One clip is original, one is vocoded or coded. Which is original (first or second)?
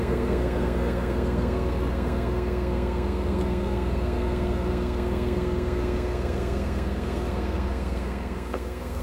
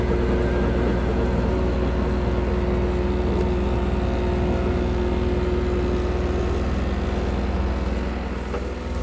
second